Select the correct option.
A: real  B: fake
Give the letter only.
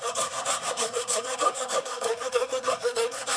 B